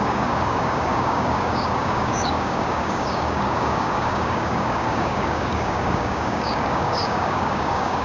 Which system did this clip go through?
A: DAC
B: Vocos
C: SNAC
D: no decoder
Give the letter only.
A